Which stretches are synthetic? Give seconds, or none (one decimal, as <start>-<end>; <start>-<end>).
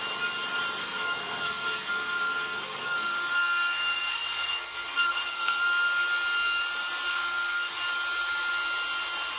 0.8-5.6; 7.1-7.7